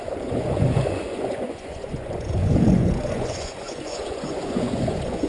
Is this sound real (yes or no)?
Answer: no